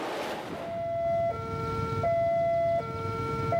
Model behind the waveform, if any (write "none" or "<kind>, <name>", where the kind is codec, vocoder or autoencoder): none